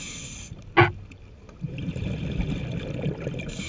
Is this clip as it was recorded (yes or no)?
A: yes